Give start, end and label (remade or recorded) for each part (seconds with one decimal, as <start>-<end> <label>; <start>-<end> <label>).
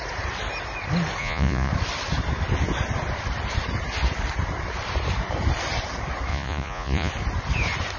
0.0-1.2 recorded; 1.2-1.7 remade; 1.7-6.3 recorded; 6.3-7.1 remade; 7.1-8.0 recorded